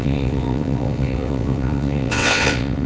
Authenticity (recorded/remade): remade